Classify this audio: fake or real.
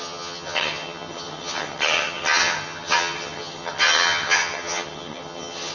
fake